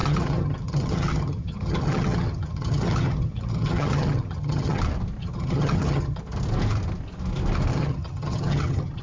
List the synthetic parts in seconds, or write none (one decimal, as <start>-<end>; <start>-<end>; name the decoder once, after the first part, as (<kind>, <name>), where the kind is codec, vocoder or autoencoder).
0.0-4.8 (vocoder, HiFi-GAN); 5.2-6.2; 7.7-9.0